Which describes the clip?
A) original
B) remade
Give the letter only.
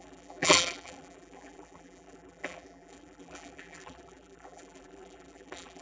B